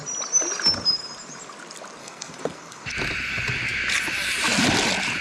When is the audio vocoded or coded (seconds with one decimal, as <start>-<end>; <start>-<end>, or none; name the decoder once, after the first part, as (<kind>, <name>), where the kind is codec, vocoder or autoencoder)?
2.0-2.9 (codec, SNAC)